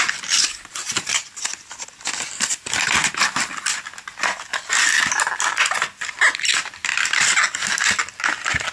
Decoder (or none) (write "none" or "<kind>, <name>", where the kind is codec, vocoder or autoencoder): none